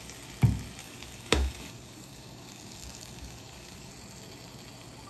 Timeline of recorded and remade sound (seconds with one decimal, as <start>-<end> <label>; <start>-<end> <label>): 0.0-0.8 recorded; 0.8-3.9 remade; 3.9-5.1 recorded